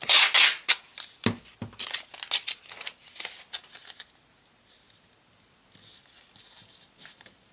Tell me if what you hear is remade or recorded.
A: recorded